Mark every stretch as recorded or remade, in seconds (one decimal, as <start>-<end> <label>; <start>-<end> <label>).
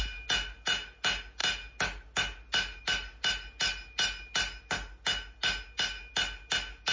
0.0-6.9 recorded